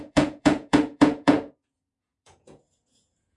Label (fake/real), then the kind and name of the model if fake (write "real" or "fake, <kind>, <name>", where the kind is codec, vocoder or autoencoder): fake, vocoder, Vocos